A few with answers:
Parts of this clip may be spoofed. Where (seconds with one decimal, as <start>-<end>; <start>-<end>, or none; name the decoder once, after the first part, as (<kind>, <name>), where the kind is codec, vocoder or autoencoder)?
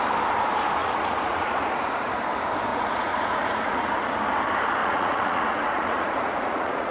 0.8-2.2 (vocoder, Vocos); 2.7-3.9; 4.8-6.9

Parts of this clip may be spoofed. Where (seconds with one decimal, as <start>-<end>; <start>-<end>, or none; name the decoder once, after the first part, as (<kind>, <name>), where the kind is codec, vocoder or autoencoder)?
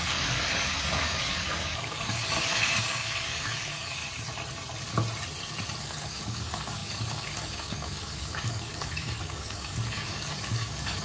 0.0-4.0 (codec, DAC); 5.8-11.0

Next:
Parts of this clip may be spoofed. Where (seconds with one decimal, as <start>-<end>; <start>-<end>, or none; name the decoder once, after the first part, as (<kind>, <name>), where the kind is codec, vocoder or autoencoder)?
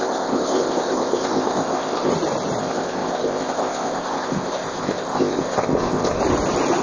0.0-2.1 (codec, ZipCodec); 2.6-6.2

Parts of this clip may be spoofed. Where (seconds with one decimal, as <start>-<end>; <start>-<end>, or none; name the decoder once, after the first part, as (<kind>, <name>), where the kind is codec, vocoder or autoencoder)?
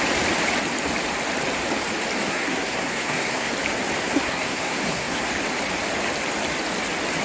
2.2-3.5 (codec, SNAC); 4.0-5.3